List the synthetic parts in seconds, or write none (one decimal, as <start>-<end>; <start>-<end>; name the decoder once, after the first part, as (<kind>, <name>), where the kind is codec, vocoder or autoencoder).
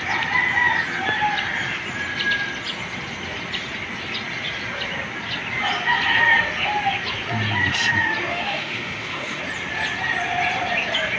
8.3-9.4 (autoencoder, DAC-VAE)